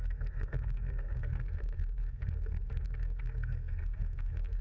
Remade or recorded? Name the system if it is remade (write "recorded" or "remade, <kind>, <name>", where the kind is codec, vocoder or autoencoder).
remade, codec, SNAC